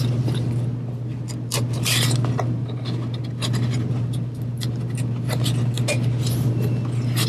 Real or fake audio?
real